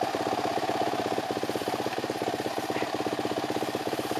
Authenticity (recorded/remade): remade